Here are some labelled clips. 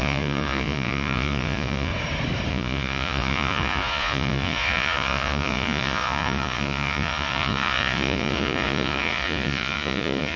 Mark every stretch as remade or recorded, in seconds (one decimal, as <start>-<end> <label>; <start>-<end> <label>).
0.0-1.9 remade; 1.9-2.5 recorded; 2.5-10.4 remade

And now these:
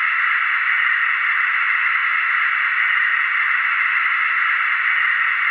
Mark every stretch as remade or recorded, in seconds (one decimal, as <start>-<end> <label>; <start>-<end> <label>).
0.0-5.5 recorded

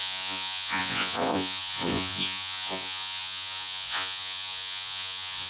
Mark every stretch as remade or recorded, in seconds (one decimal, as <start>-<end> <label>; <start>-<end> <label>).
0.0-5.5 remade